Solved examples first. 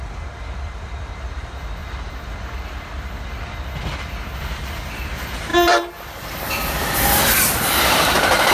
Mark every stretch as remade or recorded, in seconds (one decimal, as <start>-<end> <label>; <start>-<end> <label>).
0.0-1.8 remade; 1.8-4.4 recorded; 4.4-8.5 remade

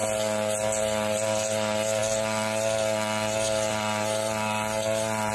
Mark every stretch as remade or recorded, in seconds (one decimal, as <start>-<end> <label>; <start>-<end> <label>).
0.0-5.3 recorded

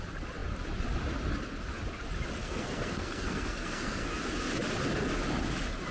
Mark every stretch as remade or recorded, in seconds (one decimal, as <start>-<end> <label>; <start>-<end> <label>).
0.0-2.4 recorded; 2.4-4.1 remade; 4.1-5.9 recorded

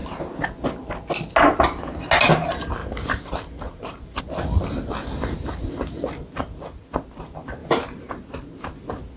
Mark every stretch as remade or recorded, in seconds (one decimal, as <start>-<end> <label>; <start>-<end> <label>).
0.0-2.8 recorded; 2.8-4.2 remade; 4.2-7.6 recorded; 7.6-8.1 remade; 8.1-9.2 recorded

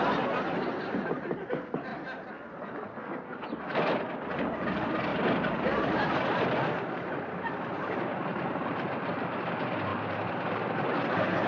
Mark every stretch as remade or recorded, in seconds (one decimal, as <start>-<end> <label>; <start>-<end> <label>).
0.0-9.9 recorded; 9.9-11.0 remade; 11.0-11.5 recorded

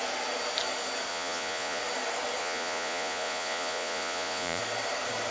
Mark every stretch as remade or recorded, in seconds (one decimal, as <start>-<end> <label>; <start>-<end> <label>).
0.0-1.1 recorded; 1.1-1.8 remade; 1.8-2.4 recorded; 2.4-4.6 remade; 4.6-5.3 recorded

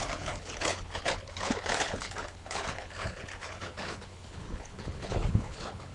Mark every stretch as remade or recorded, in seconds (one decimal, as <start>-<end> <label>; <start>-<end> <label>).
0.0-5.9 remade

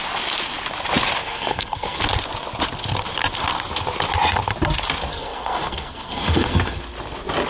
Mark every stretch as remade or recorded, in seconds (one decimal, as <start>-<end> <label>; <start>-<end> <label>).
0.0-1.2 recorded; 1.2-2.0 remade; 2.0-5.1 recorded; 5.1-6.8 remade; 6.8-7.5 recorded